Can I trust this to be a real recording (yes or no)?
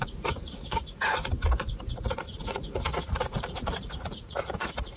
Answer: no